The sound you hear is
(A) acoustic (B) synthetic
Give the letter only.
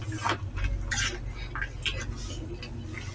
A